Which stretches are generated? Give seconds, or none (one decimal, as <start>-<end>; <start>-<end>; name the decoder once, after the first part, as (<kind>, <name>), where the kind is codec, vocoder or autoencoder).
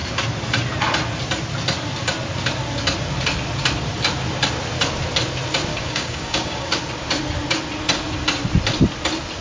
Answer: 5.7-6.7 (codec, DAC)